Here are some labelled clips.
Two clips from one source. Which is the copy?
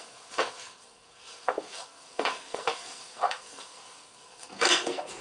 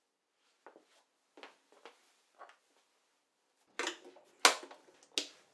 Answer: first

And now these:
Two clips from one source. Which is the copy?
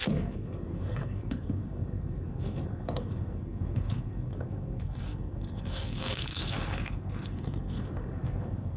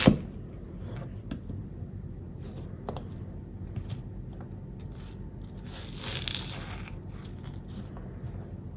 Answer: first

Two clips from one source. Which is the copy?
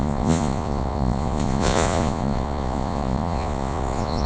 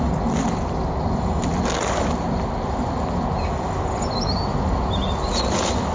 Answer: first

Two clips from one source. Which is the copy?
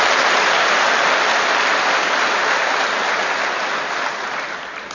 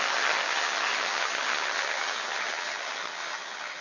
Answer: second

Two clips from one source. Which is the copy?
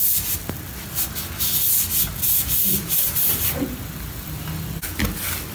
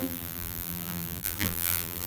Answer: second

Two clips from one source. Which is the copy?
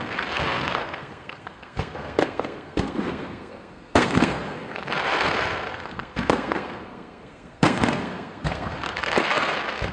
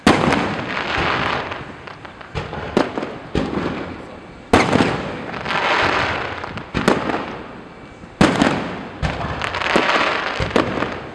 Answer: first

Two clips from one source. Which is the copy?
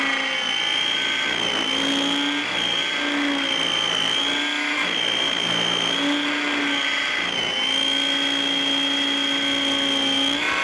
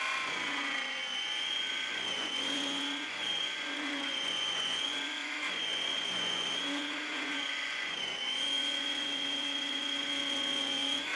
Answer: second